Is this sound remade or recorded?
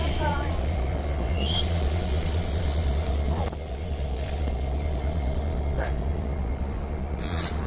remade